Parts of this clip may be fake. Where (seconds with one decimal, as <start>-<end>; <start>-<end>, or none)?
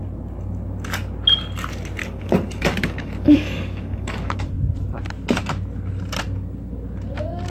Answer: 2.0-4.5